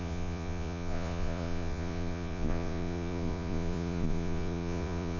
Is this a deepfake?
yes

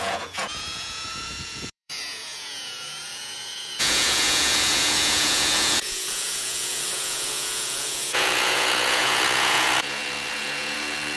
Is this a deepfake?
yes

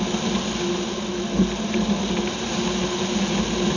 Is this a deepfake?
no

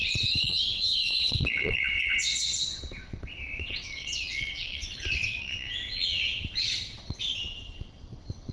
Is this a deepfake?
yes